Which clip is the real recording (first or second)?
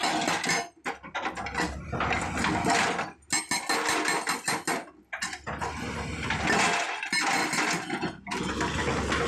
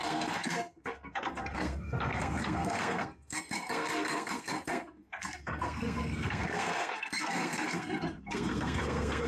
first